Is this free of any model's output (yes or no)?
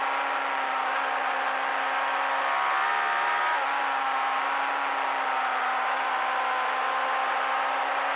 yes